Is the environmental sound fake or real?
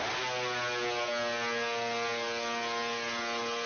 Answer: real